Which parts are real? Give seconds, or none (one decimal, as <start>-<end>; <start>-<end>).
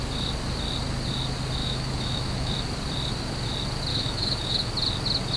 0.0-1.6; 2.5-3.9; 4.7-5.4